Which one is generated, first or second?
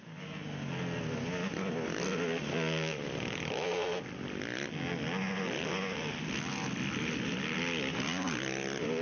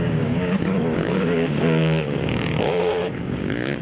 second